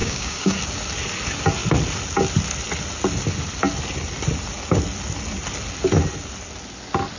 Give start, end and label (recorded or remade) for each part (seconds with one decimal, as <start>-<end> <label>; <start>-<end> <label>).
0.0-0.6 remade; 0.6-7.2 recorded